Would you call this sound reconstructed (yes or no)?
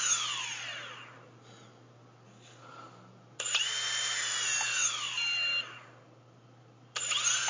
no